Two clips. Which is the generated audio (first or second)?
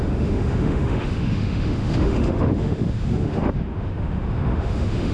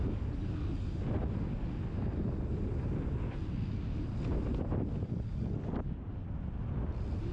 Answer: first